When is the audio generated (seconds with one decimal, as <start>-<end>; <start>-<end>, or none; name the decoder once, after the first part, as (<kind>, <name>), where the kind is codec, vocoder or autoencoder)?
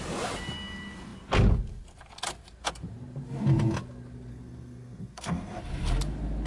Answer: 4.3-5.6 (codec, SNAC)